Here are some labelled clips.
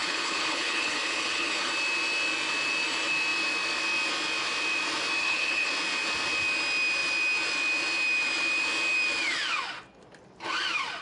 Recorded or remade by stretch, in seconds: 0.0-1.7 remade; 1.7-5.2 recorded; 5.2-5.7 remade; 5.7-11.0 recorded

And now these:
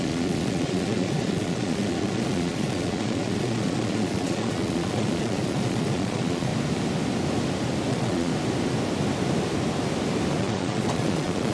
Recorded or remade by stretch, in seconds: 0.0-6.5 remade; 6.5-7.9 recorded; 7.9-8.3 remade; 8.3-10.4 recorded; 10.4-11.5 remade

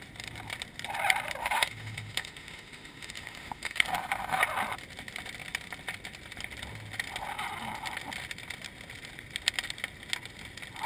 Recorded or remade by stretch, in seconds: 0.0-1.4 recorded; 1.4-4.4 remade; 4.4-10.9 recorded

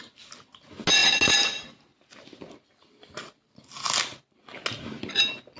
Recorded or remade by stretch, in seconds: 0.0-5.6 recorded

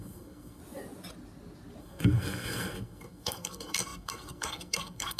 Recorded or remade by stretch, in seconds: 0.0-0.6 remade; 0.6-1.8 recorded; 1.8-5.2 remade

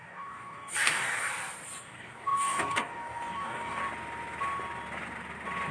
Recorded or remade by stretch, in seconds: 0.0-1.3 remade; 1.3-1.8 recorded; 1.8-3.8 remade; 3.8-5.7 recorded